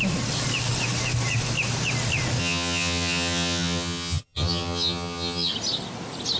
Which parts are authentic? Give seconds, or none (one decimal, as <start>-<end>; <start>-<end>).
0.0-2.4; 5.5-6.4